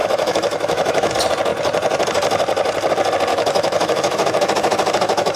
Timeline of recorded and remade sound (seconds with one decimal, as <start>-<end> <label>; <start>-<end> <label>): 0.0-1.1 remade; 1.1-3.3 recorded; 3.3-5.4 remade